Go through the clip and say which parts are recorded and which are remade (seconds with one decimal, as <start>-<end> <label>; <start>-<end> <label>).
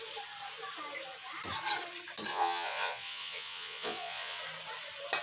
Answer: 0.0-2.3 recorded; 2.3-4.4 remade; 4.4-5.2 recorded